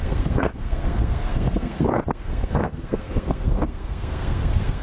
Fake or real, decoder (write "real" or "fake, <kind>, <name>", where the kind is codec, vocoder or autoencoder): fake, codec, SNAC